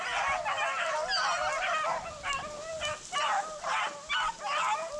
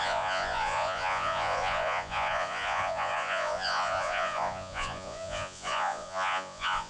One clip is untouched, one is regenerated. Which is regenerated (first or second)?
second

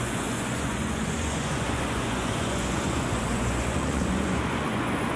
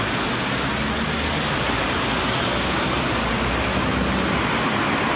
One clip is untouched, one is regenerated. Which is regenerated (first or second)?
first